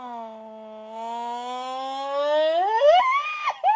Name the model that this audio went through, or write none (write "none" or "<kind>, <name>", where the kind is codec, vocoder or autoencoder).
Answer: none